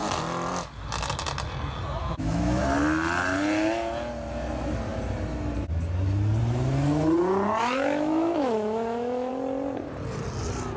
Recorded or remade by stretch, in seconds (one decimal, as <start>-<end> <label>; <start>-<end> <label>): 0.0-2.0 recorded; 2.0-2.6 remade; 2.6-7.6 recorded; 7.6-9.3 remade; 9.3-10.8 recorded